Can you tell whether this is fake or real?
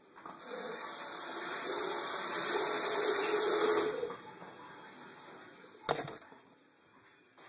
real